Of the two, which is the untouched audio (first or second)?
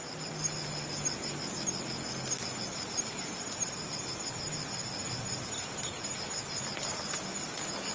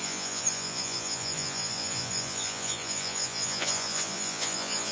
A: first